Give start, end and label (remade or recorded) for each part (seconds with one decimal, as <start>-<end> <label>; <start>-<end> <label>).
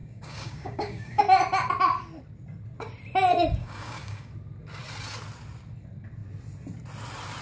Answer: 0.0-1.2 remade; 1.2-3.6 recorded; 3.6-4.3 remade; 4.3-7.4 recorded